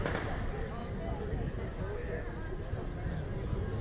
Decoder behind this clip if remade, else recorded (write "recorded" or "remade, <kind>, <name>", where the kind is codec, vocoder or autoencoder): recorded